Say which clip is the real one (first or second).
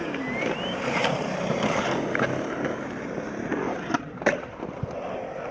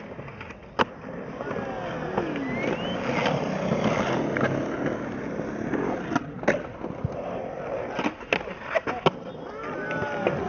second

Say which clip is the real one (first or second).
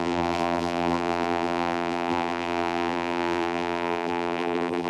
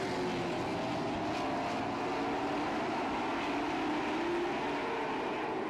second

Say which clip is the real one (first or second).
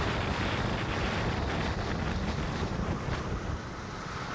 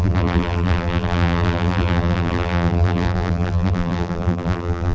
first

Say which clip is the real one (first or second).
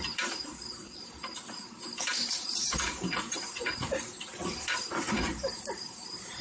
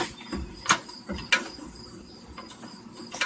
second